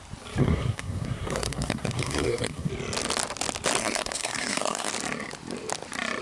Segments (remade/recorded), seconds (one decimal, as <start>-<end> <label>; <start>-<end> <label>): 0.0-0.4 recorded; 0.4-2.7 remade; 2.7-3.8 recorded; 3.8-4.9 remade; 4.9-6.2 recorded